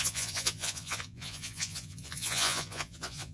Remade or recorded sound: remade